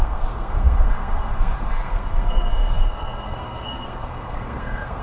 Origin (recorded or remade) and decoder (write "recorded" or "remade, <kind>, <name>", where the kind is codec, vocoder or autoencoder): remade, codec, SNAC